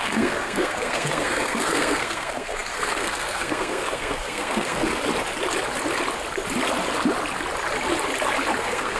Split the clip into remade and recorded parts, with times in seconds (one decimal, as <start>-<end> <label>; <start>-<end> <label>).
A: 0.0-4.9 remade; 4.9-8.6 recorded; 8.6-9.0 remade